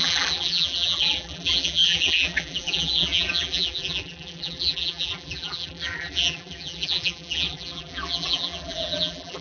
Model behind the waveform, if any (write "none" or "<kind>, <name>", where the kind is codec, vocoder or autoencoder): vocoder, BigVGAN v2